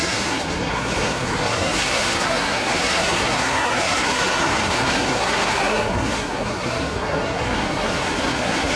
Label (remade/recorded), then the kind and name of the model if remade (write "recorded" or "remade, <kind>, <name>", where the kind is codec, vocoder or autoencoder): remade, codec, SNAC